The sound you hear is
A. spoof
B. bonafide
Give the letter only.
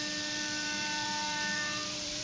A